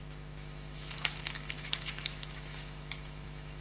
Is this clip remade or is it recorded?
remade